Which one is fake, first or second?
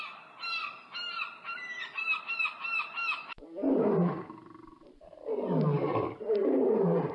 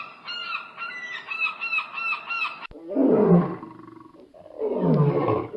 first